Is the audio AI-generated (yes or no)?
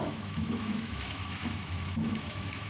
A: yes